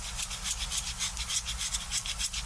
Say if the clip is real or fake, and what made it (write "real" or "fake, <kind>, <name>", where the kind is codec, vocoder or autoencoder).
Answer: real